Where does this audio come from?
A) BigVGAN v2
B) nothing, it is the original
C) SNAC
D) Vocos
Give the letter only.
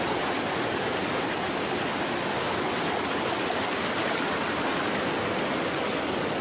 B